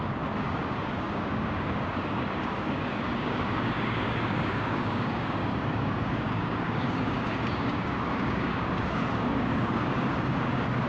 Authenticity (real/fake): fake